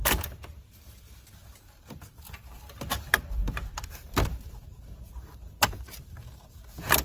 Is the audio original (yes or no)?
no